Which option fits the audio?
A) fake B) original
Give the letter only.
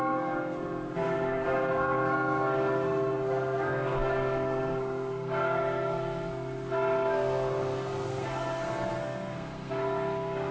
A